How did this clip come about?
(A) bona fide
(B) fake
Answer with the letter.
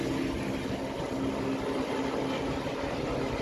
A